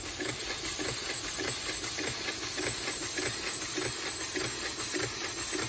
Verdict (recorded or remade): recorded